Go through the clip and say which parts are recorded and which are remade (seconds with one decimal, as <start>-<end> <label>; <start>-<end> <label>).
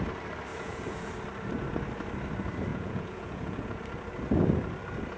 0.0-0.5 recorded; 0.5-1.1 remade; 1.1-2.7 recorded; 2.7-3.8 remade; 3.8-5.2 recorded